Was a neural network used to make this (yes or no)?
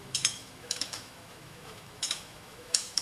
yes